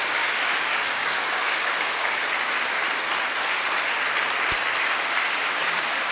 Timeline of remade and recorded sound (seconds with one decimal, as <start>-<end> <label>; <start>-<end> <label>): 0.0-2.2 remade; 2.2-4.8 recorded; 4.8-6.1 remade